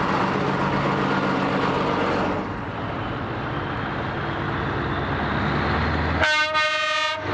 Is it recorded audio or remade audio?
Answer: recorded